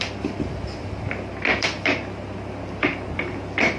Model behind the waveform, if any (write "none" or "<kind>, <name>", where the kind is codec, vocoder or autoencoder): vocoder, BigVGAN v2